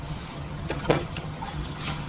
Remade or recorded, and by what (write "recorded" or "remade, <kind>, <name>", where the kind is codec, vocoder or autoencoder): remade, vocoder, HiFi-GAN